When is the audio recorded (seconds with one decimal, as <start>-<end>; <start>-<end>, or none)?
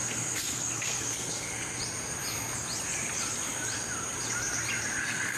1.8-5.0